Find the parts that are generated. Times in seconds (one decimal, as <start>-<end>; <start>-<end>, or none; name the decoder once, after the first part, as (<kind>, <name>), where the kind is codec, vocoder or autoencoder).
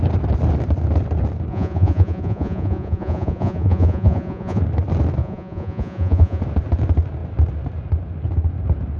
1.5-4.6 (vocoder, Vocos); 5.2-6.4